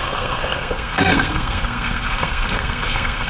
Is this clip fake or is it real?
fake